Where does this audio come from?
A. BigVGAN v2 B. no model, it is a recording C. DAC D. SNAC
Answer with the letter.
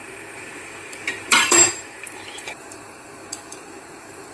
A